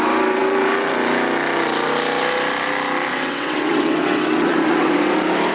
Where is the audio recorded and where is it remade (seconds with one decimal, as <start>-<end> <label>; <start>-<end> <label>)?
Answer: 0.0-3.1 recorded; 3.1-4.9 remade; 4.9-5.5 recorded